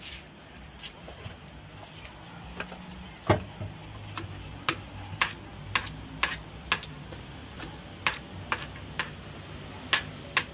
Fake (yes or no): no